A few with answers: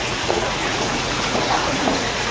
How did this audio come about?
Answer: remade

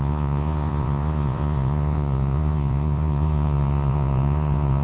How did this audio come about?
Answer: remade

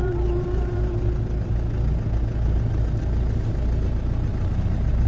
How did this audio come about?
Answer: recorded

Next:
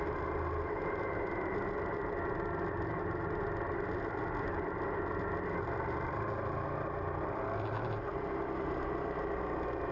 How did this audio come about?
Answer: recorded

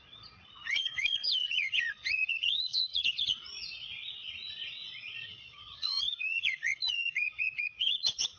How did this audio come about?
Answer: remade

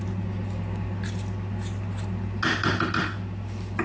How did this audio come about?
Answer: recorded